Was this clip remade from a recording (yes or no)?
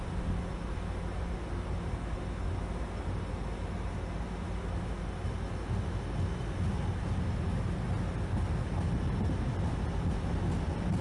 no